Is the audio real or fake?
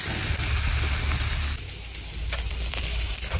real